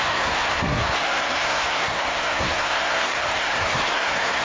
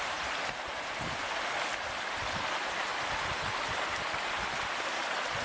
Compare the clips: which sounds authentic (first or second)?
second